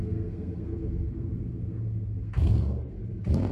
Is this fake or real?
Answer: fake